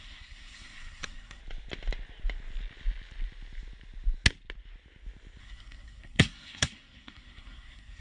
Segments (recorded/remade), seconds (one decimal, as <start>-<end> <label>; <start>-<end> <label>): 0.0-1.4 remade; 1.4-5.4 recorded; 5.4-8.0 remade